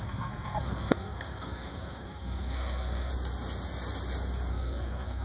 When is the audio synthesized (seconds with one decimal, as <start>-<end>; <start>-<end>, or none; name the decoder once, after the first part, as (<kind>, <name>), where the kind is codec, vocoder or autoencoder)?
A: 0.0-3.1 (codec, SNAC); 4.5-5.2